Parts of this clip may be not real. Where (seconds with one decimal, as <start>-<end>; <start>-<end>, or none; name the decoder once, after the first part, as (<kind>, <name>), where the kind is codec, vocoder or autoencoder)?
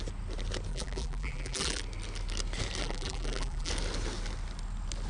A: 0.7-1.8 (vocoder, BigVGAN v2); 2.8-3.7